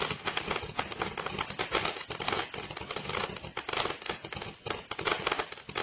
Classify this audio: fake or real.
real